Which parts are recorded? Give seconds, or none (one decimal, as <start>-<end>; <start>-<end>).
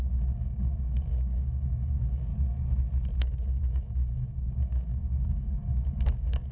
2.3-3.2